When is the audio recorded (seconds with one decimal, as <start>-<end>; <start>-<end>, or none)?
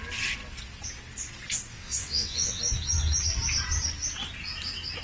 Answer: 0.0-1.7; 2.6-5.0